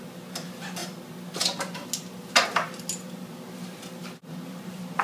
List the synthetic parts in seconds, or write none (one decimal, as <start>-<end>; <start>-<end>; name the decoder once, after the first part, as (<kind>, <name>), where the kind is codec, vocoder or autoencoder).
none